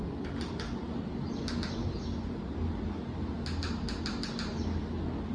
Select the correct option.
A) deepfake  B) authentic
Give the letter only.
B